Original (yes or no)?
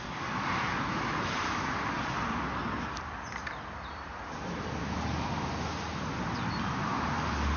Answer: yes